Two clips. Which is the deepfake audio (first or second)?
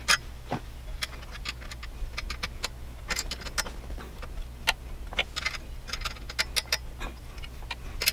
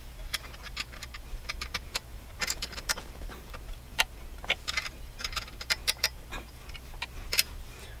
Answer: second